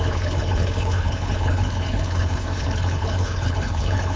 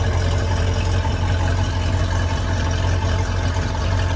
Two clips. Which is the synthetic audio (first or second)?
first